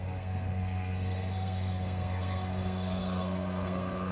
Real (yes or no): no